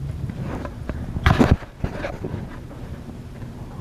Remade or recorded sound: remade